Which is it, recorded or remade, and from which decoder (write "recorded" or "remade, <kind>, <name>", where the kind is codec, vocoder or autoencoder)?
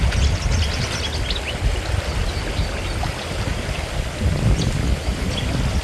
recorded